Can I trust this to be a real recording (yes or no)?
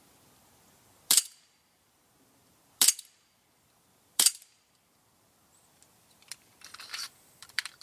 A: no